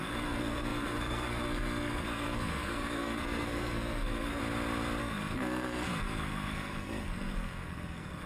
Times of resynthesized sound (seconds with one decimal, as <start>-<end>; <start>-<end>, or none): 0.0-4.4; 5.0-8.3